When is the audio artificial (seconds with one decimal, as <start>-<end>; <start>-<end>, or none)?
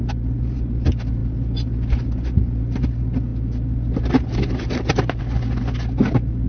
none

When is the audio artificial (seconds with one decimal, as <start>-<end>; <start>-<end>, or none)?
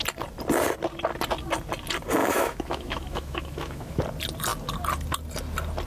2.2-4.0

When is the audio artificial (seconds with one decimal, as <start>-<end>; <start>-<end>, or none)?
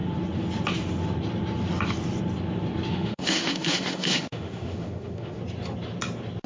2.9-5.4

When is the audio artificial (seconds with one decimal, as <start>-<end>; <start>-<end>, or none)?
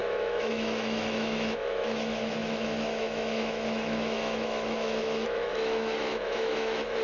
0.0-7.0